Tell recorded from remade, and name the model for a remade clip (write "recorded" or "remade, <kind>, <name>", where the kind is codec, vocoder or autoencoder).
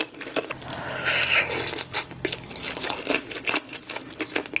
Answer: recorded